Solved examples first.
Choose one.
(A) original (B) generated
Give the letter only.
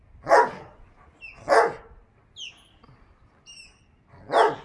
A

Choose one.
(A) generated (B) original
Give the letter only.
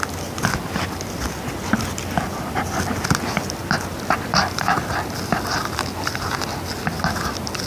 B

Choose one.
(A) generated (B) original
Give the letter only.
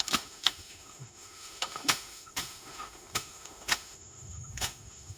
A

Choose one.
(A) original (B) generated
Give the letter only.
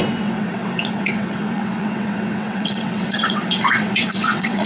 B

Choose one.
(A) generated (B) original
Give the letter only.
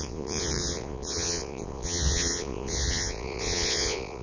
A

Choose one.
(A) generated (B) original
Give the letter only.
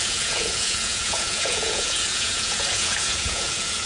A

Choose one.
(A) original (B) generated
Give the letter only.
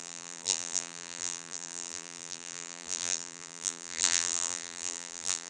B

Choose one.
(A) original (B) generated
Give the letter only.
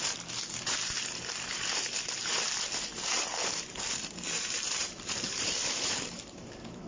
B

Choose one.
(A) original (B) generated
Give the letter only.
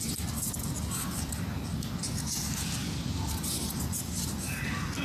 A